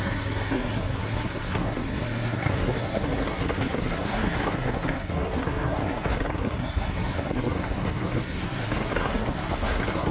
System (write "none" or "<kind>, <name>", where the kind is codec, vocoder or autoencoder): codec, SNAC